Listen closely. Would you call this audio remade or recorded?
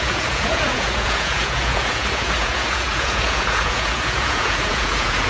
remade